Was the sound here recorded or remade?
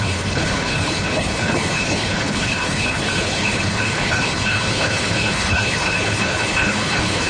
remade